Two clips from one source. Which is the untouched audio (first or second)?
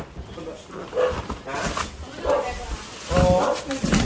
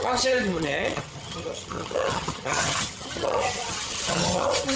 first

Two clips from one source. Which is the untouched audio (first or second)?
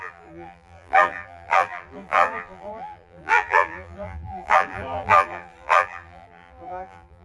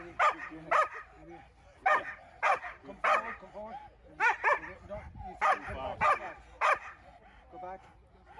second